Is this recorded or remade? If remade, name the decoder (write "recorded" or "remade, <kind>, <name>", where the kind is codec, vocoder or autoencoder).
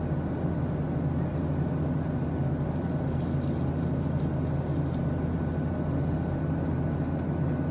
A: recorded